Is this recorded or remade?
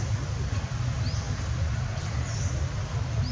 recorded